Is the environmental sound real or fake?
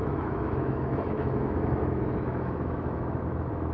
fake